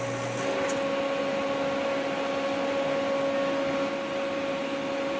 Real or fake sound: real